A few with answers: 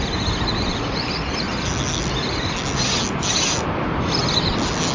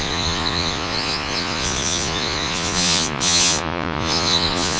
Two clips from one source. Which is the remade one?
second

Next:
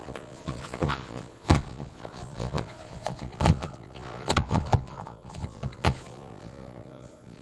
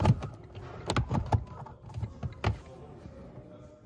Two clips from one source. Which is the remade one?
first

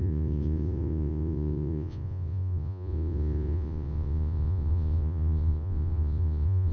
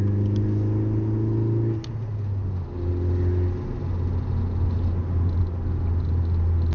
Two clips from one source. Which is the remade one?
first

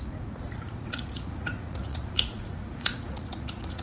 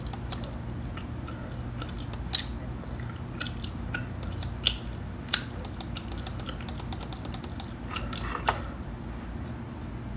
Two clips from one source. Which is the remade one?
first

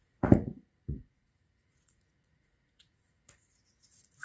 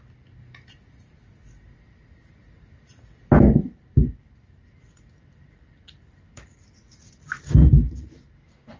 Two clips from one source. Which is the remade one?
first